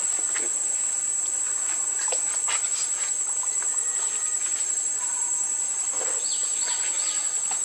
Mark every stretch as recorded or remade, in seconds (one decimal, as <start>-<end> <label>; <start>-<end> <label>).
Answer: 0.0-3.7 recorded; 3.7-4.7 remade; 4.7-7.6 recorded